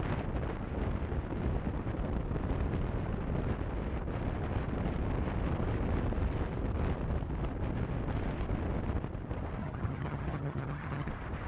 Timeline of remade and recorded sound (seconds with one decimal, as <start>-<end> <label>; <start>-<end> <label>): 0.0-9.6 recorded; 9.6-11.1 remade; 11.1-11.5 recorded